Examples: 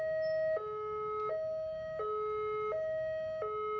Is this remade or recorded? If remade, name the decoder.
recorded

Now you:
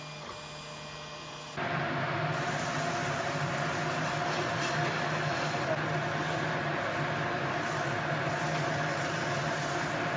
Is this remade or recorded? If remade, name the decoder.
recorded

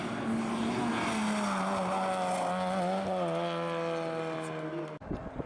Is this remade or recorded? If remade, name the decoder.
recorded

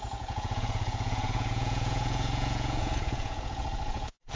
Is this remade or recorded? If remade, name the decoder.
remade, vocoder, Vocos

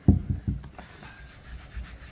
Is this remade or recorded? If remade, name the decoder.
recorded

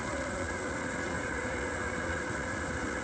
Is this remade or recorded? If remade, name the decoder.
remade, vocoder, Vocos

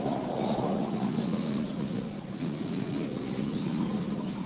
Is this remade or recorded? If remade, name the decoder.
remade, vocoder, Vocos